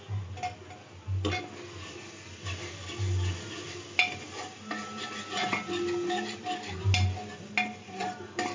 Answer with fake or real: real